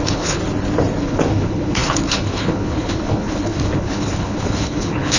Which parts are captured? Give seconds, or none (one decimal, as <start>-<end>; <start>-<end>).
0.4-1.0